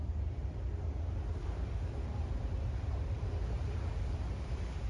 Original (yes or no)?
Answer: no